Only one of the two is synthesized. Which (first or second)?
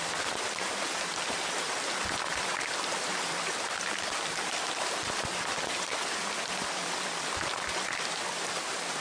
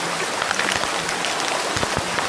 first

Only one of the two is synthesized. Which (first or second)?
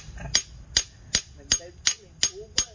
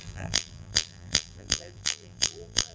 second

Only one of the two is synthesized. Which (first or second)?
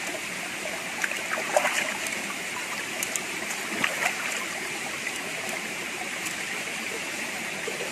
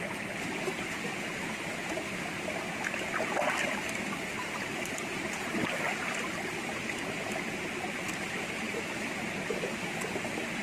first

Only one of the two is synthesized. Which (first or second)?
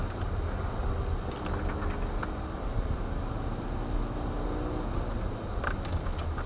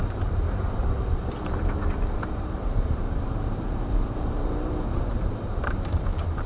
second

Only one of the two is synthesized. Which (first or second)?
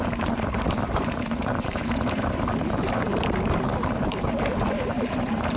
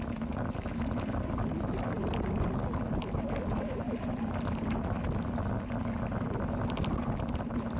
first